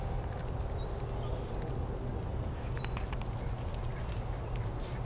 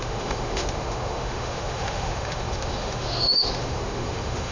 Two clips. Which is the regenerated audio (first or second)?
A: second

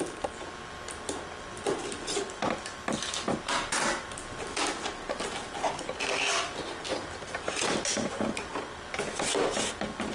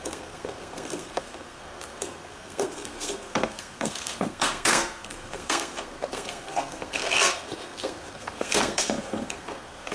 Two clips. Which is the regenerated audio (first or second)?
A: second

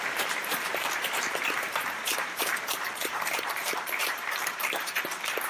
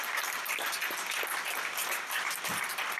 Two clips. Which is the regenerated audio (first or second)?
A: first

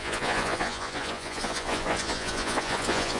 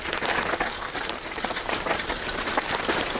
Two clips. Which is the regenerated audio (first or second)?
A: first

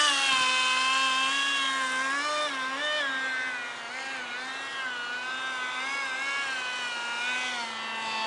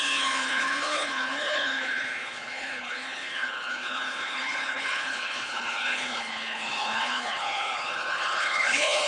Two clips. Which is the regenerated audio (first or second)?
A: second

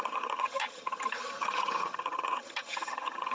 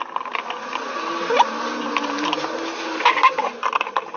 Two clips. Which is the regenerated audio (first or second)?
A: first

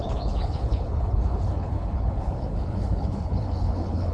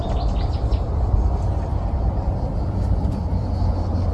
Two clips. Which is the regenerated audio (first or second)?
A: first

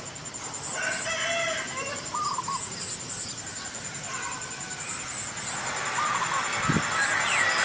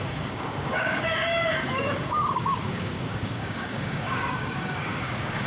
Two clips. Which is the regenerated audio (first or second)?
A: second